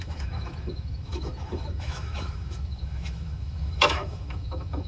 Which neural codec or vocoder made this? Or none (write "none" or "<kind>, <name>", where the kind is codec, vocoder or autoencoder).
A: autoencoder, DAC-VAE